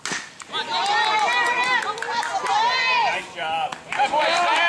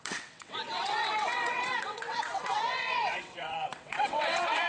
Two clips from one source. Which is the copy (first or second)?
second